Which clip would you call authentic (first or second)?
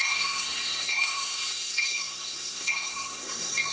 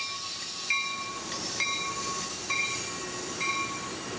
second